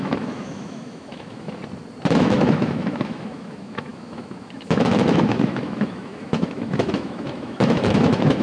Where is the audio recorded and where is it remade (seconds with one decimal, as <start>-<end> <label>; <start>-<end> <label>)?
0.0-1.6 remade; 1.6-2.2 recorded; 2.2-8.4 remade